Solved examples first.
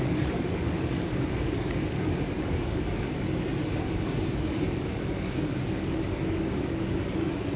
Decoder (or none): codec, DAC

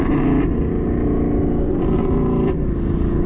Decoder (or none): none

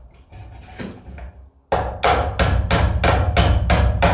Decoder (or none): none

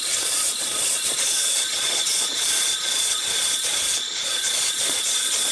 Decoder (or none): vocoder, Vocos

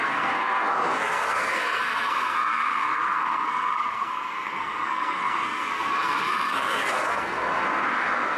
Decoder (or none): codec, SNAC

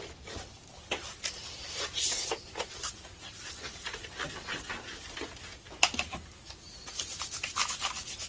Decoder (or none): none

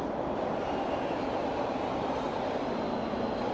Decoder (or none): none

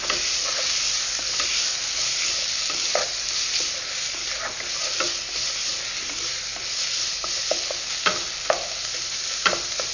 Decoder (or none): none